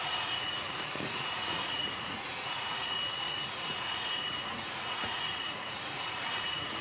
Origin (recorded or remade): remade